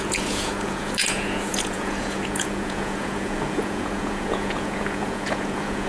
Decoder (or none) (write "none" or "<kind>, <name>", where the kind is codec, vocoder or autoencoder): vocoder, Vocos